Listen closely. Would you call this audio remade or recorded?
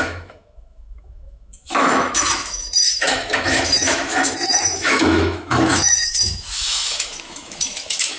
remade